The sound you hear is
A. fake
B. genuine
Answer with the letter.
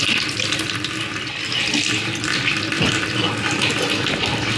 A